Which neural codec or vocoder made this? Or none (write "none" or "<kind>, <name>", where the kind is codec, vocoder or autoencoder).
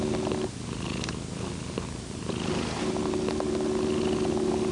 none